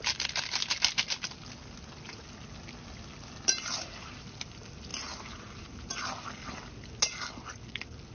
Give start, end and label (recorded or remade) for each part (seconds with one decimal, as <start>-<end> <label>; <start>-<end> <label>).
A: 0.0-8.1 recorded